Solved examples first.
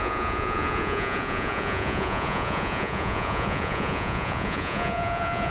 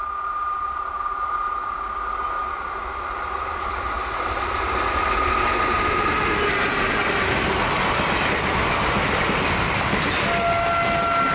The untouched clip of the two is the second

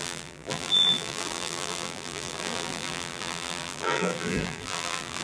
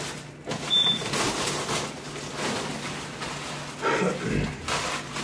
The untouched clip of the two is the second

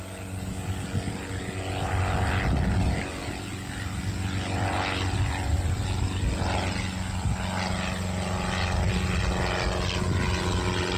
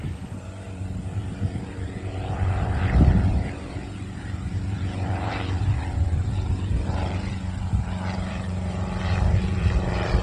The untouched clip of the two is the first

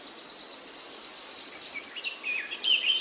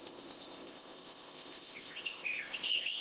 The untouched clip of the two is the first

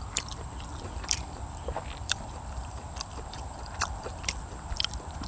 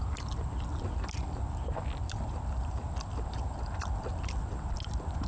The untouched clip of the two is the second